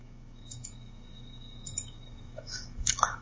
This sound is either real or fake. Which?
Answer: fake